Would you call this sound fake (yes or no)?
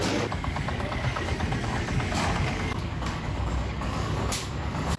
yes